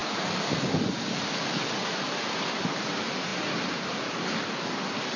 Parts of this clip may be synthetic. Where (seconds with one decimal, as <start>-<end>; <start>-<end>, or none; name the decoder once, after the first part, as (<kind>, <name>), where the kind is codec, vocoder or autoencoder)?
none